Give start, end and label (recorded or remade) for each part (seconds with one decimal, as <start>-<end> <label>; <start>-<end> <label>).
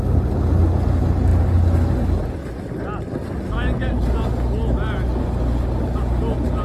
0.0-6.6 recorded